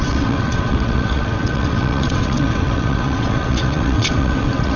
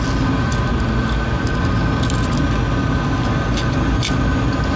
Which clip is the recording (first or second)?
second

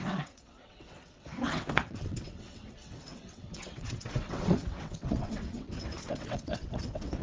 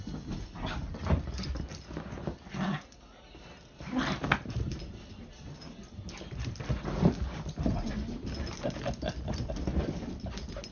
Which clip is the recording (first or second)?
second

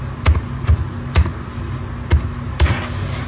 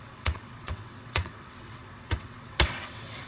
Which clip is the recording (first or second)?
first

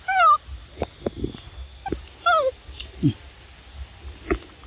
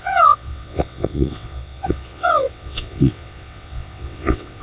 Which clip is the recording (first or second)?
first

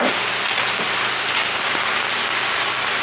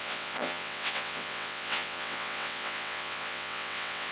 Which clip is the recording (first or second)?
first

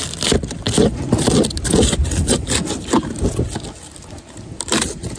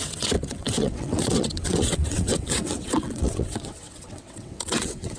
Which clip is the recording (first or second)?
first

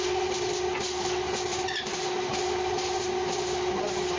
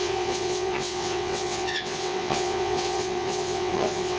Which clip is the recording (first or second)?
first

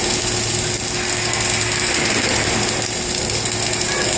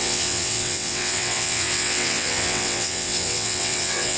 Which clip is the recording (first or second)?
first